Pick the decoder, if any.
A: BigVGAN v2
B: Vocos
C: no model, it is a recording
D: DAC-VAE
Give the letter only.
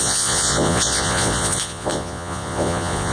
B